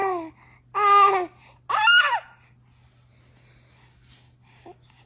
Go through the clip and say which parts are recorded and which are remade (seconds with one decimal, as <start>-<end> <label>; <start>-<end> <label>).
0.0-5.1 recorded